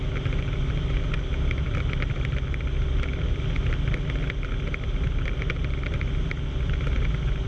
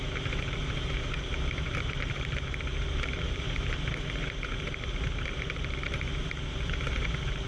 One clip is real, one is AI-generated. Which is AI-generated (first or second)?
second